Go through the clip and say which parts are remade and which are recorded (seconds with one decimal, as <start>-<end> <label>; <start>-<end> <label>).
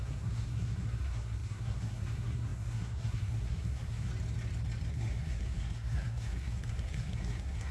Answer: 0.0-4.1 remade; 4.1-4.9 recorded; 4.9-7.7 remade